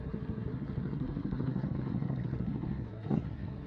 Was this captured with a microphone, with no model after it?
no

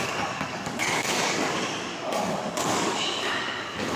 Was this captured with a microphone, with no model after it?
no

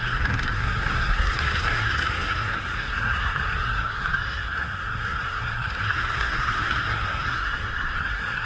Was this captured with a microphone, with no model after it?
no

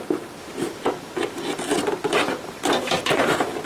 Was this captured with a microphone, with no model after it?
yes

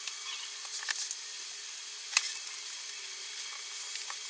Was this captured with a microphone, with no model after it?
yes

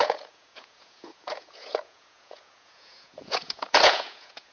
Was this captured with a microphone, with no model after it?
no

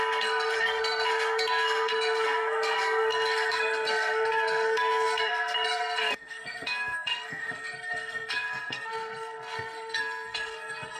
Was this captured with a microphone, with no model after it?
no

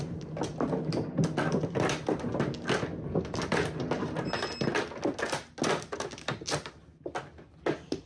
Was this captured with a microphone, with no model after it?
yes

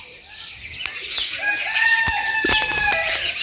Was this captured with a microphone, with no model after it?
yes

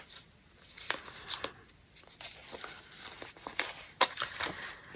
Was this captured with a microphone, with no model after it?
yes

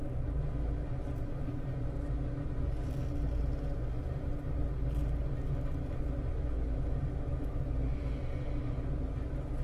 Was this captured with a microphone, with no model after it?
yes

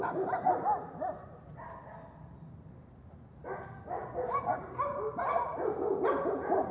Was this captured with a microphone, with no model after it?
yes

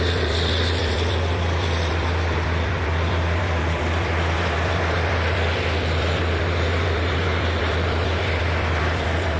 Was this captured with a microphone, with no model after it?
no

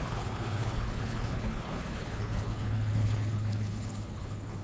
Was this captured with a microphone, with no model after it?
no